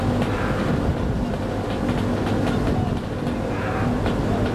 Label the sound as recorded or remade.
recorded